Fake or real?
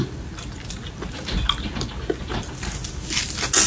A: real